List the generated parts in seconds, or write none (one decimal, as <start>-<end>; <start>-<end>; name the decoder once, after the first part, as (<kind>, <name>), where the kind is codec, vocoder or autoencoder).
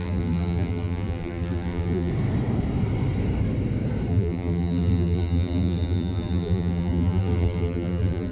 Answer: 0.0-2.1 (vocoder, BigVGAN v2); 4.1-8.3